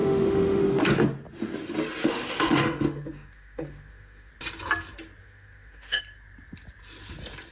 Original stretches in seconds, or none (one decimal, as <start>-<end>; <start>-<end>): 0.6-2.0; 4.3-5.2; 6.0-7.5